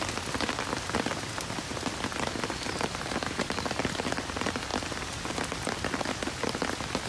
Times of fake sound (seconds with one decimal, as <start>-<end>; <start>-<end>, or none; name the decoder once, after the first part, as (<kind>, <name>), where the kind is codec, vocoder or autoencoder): none